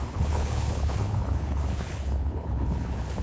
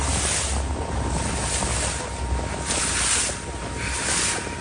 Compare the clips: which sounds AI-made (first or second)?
first